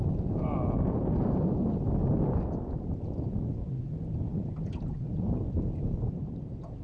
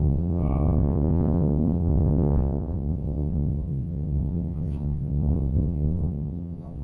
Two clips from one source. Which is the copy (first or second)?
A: second